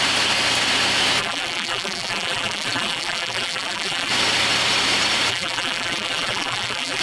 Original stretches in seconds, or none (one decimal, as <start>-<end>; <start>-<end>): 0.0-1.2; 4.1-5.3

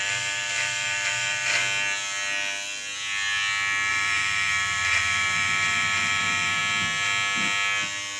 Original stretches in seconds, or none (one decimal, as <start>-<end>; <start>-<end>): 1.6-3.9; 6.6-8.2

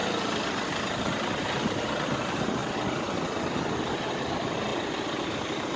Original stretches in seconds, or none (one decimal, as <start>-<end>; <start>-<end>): 0.0-1.4; 2.6-4.0

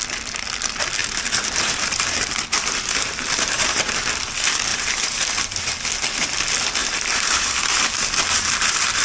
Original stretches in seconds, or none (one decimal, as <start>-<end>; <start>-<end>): 0.0-1.0; 4.0-4.7; 5.6-6.8; 7.8-9.0

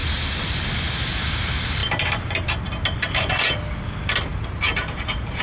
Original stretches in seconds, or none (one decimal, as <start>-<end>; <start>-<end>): 0.6-4.3

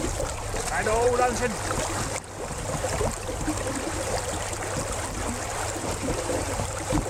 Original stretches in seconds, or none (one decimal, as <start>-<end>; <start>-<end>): 1.1-5.4

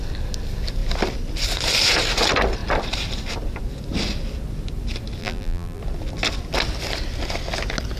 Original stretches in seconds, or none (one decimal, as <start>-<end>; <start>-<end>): 0.0-5.2; 5.8-8.0